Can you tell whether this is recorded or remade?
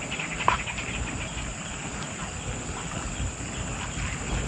recorded